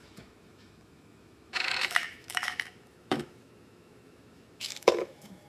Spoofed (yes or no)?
yes